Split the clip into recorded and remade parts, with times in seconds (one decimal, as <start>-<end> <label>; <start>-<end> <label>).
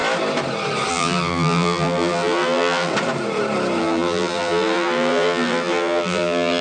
0.0-0.9 recorded; 0.9-2.9 remade; 2.9-3.8 recorded; 3.8-6.6 remade